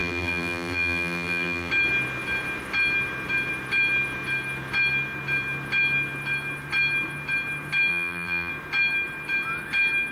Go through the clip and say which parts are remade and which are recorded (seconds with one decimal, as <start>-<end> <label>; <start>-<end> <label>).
0.0-1.7 remade; 1.7-7.9 recorded; 7.9-8.5 remade; 8.5-10.1 recorded